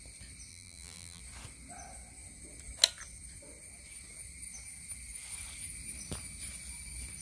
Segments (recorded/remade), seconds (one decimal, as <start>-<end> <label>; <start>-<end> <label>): 0.0-0.5 recorded; 0.5-1.2 remade; 1.2-7.2 recorded